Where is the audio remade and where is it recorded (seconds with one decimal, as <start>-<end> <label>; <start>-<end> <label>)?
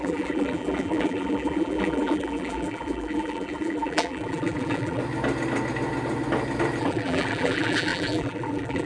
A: 0.0-5.0 remade; 5.0-6.8 recorded; 6.8-8.9 remade